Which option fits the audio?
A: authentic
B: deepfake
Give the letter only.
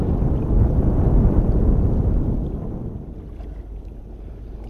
A